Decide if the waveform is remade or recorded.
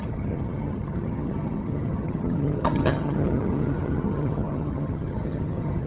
remade